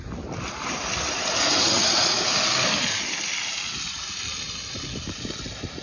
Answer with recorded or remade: recorded